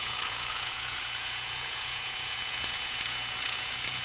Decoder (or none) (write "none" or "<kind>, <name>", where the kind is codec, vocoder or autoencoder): vocoder, Vocos